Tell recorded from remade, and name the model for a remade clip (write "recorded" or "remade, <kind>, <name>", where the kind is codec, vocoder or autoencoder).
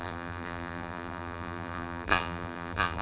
remade, vocoder, BigVGAN v2